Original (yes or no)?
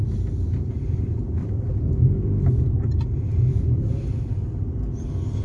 yes